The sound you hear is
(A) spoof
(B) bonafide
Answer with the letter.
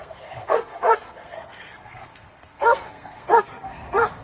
A